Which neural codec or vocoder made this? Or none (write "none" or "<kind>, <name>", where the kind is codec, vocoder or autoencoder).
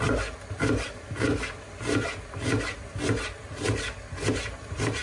none